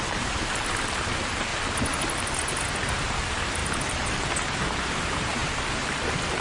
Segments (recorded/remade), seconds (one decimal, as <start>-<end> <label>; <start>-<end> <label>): 0.0-1.5 remade; 1.5-3.1 recorded; 3.1-3.6 remade; 3.6-4.9 recorded; 4.9-6.4 remade